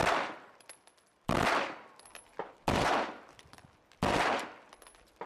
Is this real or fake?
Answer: real